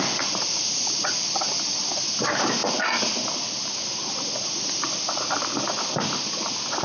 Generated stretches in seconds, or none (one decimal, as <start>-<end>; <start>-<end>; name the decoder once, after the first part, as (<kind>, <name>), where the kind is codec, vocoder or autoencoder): none